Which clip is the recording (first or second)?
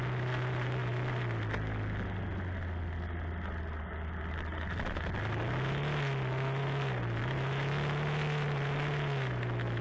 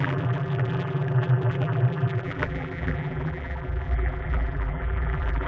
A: first